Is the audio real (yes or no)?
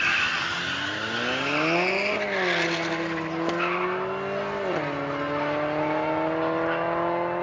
yes